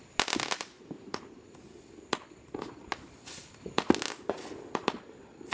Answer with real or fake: real